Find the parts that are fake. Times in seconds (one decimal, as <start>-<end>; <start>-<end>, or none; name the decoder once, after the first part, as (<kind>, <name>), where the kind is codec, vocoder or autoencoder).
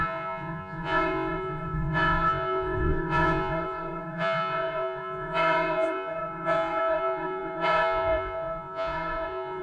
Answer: 0.0-9.6 (vocoder, Vocos)